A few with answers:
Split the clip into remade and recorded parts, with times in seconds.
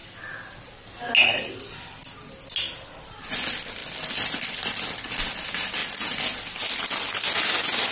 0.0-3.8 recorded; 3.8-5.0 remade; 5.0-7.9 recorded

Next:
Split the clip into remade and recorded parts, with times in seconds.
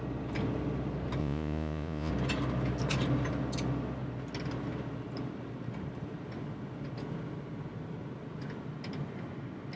0.0-1.2 recorded; 1.2-2.1 remade; 2.1-9.8 recorded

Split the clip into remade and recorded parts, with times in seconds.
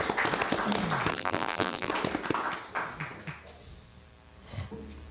0.0-1.1 recorded; 1.1-1.9 remade; 1.9-5.1 recorded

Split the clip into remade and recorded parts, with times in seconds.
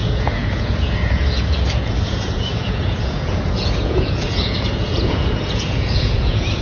0.0-6.6 remade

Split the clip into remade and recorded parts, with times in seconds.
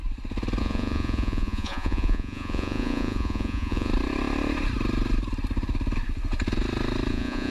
0.0-0.6 recorded; 0.6-3.9 remade; 3.9-7.1 recorded; 7.1-7.5 remade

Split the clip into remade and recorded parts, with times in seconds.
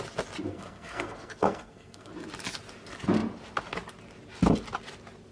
0.0-0.5 recorded; 0.5-2.1 remade; 2.1-5.3 recorded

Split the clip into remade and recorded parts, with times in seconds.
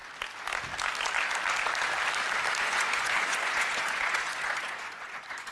0.0-2.6 recorded; 2.6-5.5 remade